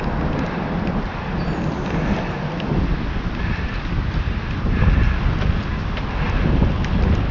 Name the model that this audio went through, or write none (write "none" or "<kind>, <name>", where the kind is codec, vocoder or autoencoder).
none